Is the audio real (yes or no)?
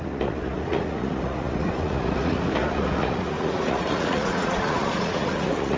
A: no